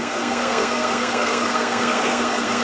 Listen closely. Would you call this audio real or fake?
fake